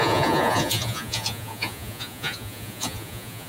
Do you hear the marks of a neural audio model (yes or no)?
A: yes